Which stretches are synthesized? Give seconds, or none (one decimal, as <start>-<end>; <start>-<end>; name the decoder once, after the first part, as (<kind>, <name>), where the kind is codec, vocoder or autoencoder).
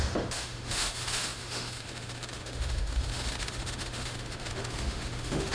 0.0-5.5 (autoencoder, DAC-VAE)